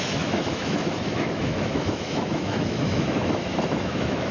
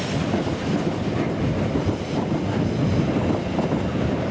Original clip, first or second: second